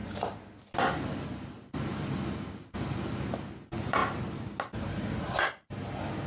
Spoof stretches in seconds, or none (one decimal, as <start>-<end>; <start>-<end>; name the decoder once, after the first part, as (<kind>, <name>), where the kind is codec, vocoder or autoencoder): none